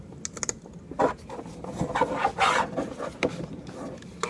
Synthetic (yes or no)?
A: no